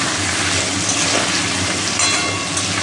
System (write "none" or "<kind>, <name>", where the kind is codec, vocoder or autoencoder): none